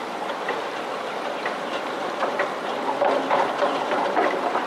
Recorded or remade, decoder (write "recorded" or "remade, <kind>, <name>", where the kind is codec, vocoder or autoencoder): remade, vocoder, BigVGAN v2